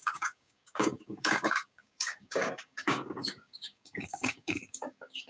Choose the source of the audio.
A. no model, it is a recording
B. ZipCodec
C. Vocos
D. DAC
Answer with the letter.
D